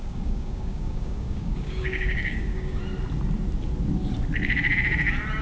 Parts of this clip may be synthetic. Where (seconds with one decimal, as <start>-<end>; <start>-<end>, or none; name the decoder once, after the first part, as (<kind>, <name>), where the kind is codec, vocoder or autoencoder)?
0.0-2.8 (codec, DAC)